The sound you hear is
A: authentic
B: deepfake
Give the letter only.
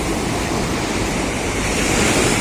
B